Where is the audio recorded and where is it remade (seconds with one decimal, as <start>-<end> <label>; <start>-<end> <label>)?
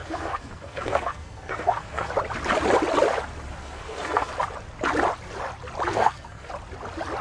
0.0-2.1 remade; 2.1-3.6 recorded; 3.6-4.3 remade; 4.3-5.9 recorded; 5.9-6.5 remade; 6.5-7.2 recorded